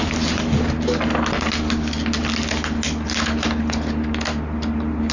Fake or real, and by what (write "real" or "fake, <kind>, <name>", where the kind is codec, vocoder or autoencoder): real